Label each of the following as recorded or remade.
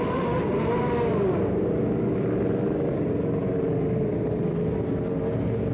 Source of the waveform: recorded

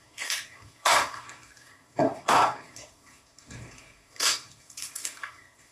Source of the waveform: remade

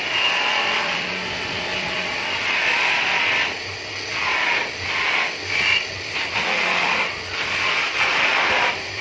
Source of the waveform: recorded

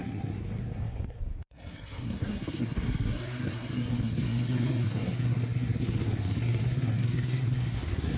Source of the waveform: remade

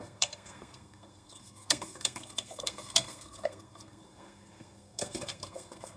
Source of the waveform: remade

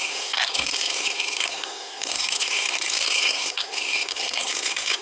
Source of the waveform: remade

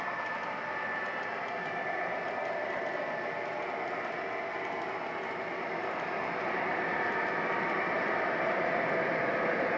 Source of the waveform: recorded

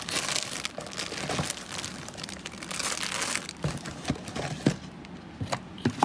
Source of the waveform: recorded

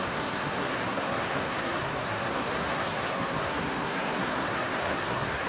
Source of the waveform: remade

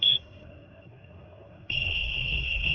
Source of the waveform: remade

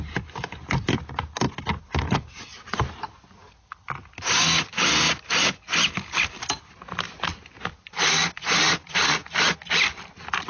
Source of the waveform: recorded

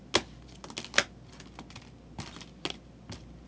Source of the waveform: recorded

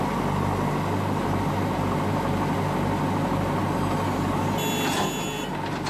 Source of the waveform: recorded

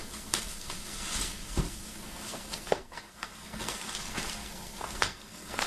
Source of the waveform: remade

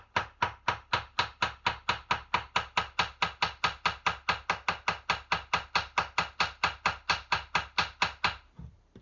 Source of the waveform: recorded